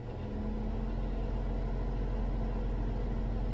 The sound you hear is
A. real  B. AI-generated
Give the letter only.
A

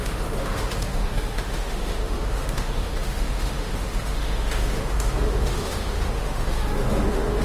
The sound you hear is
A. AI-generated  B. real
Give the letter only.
A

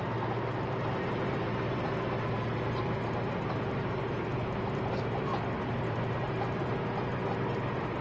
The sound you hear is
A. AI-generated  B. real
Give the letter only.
B